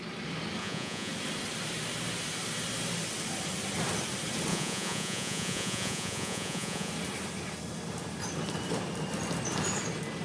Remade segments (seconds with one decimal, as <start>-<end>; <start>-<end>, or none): 0.6-1.1; 4.5-6.9